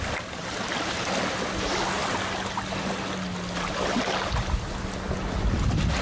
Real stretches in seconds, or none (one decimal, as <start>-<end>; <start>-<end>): 0.0-6.0